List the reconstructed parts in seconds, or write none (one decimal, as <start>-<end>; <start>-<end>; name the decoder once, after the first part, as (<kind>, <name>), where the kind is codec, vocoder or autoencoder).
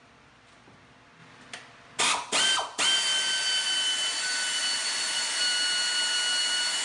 none